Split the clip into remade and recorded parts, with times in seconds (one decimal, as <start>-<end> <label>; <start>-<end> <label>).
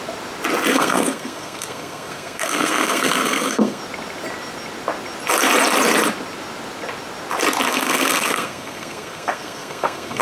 0.0-0.7 recorded; 0.7-3.8 remade; 3.8-7.7 recorded; 7.7-10.2 remade